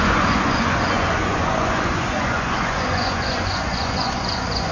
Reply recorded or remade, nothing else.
remade